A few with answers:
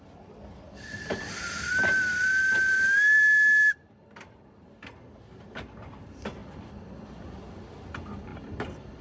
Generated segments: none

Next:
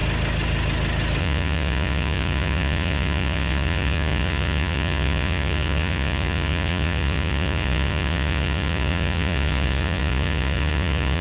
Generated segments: 1.2-11.2 (vocoder, Vocos)

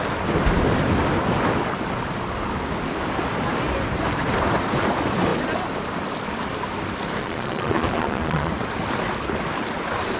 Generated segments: 7.2-8.5 (vocoder, Vocos)